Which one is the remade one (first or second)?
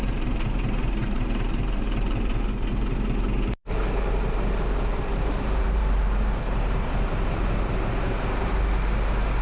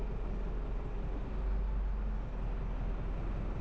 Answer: first